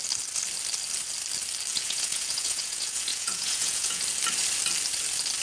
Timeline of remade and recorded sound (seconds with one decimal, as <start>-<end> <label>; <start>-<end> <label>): 0.0-1.7 recorded; 1.7-4.0 remade; 4.0-5.4 recorded